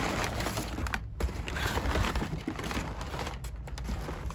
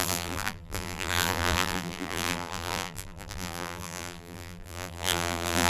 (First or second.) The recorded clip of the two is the first